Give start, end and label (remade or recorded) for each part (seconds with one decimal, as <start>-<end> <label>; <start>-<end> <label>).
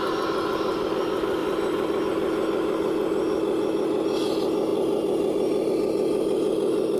0.0-1.4 recorded; 1.4-2.0 remade; 2.0-4.7 recorded; 4.7-5.7 remade; 5.7-7.0 recorded